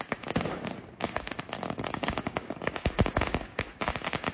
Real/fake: fake